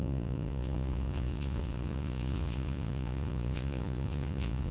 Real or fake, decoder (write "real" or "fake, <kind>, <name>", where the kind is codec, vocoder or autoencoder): fake, vocoder, Vocos